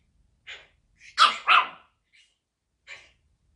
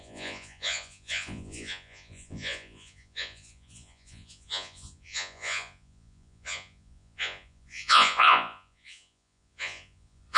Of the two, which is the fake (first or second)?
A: second